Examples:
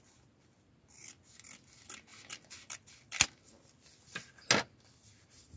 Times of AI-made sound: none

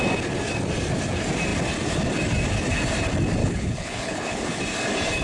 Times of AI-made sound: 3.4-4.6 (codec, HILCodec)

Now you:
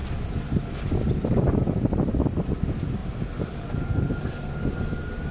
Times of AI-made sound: 1.6-2.3 (vocoder, BigVGAN v2); 3.0-3.7

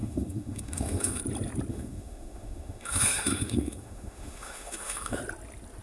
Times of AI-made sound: 0.0-1.2 (autoencoder, DAC-VAE); 1.7-5.2